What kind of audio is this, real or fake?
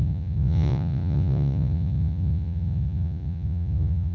fake